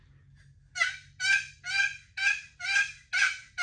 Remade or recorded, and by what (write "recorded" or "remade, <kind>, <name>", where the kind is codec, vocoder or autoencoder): recorded